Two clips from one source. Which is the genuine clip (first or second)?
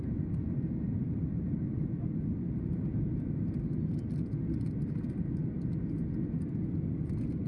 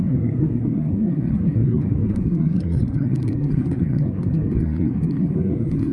first